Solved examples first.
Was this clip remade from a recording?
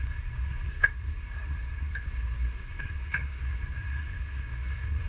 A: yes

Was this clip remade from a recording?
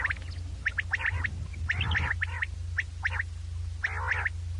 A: no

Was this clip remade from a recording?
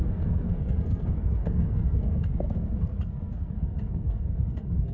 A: yes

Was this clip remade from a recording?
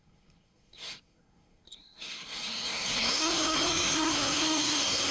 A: yes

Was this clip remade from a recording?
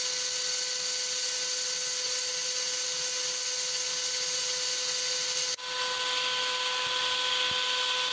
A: no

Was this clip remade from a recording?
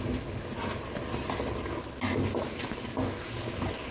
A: no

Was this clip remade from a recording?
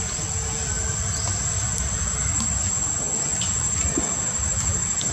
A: no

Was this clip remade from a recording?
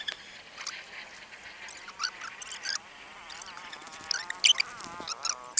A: no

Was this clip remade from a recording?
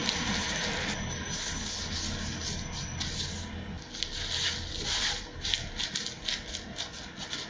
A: no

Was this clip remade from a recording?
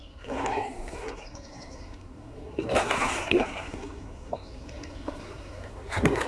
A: yes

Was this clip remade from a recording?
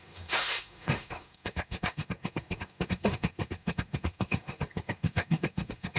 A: yes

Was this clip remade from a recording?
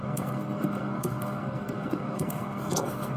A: yes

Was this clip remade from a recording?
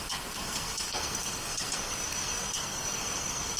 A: yes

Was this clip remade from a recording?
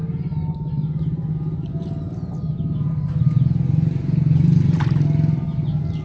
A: no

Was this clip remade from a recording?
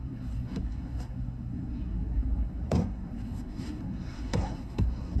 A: yes